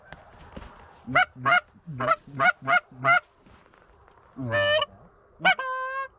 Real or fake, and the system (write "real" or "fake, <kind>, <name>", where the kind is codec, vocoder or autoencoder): real